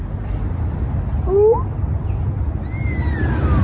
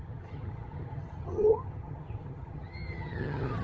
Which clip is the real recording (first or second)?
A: first